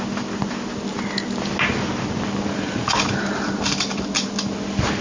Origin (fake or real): real